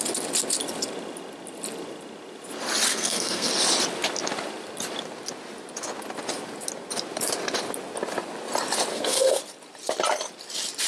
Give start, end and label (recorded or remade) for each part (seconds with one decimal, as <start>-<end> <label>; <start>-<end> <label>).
0.0-2.9 recorded; 2.9-3.5 remade; 3.5-8.9 recorded; 8.9-9.4 remade; 9.4-10.9 recorded